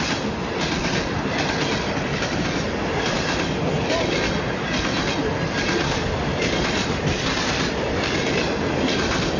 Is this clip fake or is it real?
real